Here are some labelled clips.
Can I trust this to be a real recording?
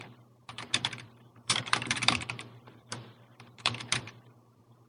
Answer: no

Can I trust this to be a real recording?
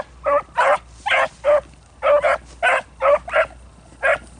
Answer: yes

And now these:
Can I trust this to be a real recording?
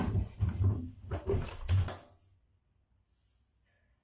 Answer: yes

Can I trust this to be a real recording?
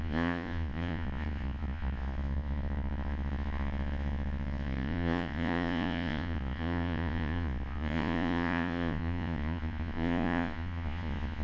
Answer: no